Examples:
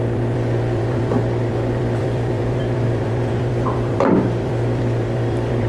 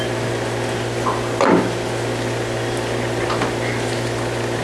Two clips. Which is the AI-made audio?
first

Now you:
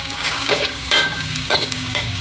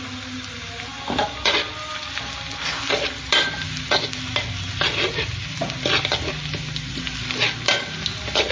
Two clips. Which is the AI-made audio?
first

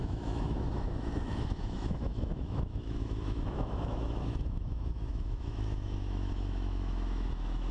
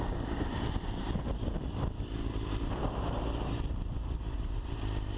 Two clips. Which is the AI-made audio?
first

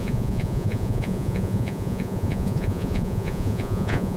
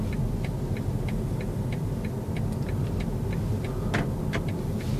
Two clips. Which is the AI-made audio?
first